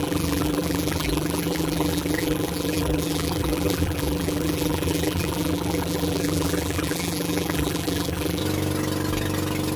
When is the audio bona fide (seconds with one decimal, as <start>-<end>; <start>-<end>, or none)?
8.4-9.8